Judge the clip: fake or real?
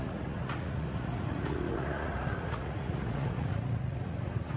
fake